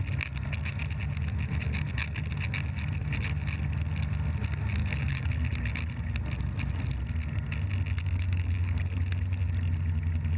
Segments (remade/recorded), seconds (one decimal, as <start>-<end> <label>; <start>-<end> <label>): 0.0-4.8 recorded; 4.8-5.3 remade; 5.3-8.0 recorded; 8.0-8.9 remade; 8.9-10.4 recorded